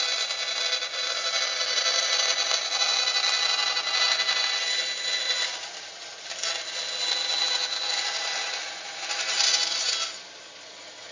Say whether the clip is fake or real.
real